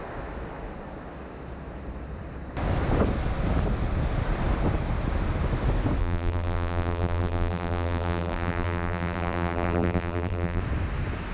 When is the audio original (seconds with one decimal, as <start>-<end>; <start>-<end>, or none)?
0.0-6.0; 10.6-11.3